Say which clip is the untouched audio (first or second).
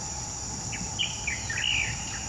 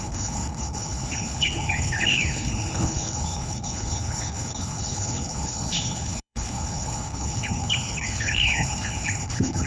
first